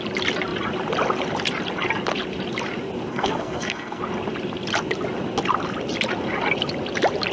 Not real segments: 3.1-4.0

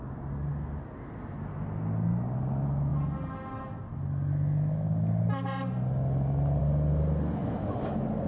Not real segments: none

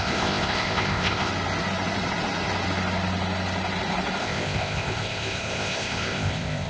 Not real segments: 0.0-1.3; 4.2-6.7

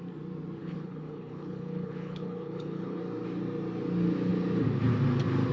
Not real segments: 0.6-3.0